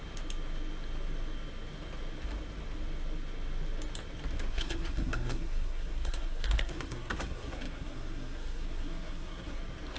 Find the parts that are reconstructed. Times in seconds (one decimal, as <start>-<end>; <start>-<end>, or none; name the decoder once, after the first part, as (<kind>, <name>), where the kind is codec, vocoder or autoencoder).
4.5-9.6 (codec, SNAC)